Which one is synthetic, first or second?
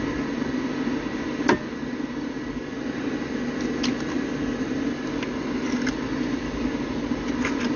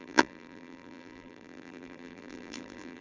second